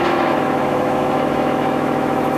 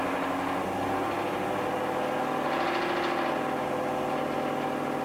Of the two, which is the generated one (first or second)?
first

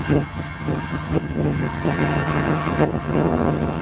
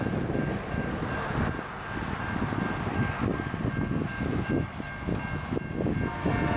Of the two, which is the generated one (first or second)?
first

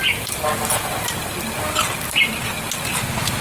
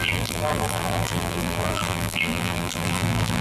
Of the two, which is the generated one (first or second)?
second